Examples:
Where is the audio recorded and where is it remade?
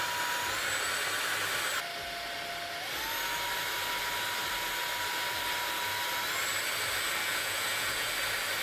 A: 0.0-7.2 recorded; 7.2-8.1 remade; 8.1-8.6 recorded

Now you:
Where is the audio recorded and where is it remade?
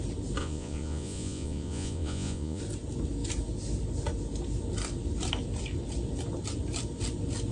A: 0.0-0.4 recorded; 0.4-2.6 remade; 2.6-7.5 recorded